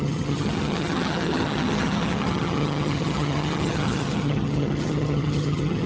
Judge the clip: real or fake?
fake